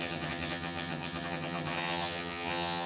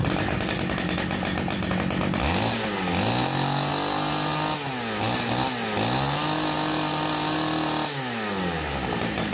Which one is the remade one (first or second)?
first